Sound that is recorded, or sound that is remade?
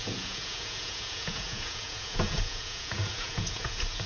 remade